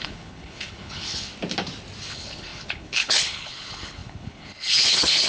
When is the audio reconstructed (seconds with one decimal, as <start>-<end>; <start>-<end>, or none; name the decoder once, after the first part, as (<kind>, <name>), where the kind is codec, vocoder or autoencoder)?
0.0-1.3 (codec, HILCodec); 2.0-5.3